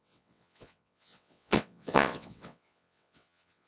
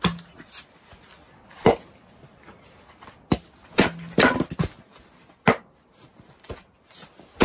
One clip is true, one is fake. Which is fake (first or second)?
first